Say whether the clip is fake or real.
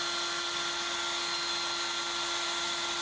real